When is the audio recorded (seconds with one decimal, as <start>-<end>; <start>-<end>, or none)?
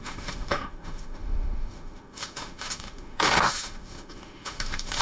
none